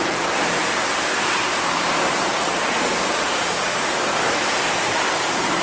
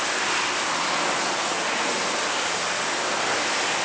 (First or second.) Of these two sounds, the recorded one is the second